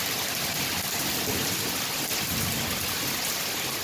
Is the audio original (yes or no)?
no